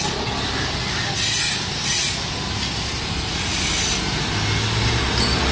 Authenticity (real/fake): real